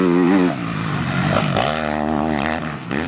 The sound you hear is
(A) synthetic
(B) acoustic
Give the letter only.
B